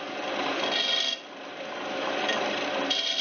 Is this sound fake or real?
real